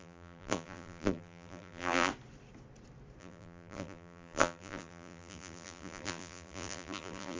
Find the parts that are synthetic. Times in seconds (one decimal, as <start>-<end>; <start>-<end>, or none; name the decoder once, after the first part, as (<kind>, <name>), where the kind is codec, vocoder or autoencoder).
0.0-2.1 (vocoder, BigVGAN v2); 3.2-7.4